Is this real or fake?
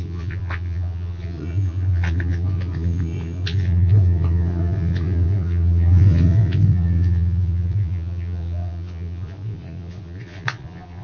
fake